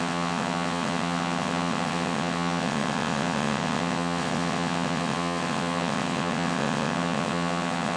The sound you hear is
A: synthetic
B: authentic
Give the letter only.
A